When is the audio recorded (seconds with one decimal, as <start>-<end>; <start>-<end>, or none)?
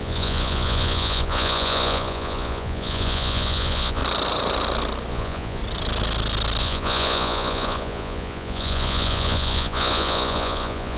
4.0-5.1; 5.6-6.6